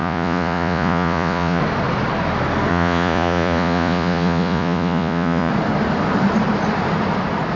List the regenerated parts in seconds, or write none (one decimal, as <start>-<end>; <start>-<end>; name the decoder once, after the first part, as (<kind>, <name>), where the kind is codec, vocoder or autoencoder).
0.0-1.6 (vocoder, Vocos); 2.7-5.5